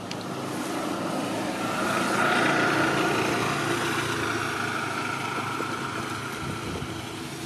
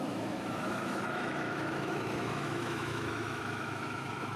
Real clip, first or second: first